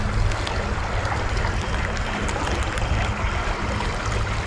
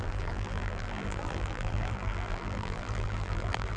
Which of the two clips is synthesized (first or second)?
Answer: second